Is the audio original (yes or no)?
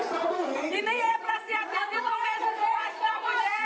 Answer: no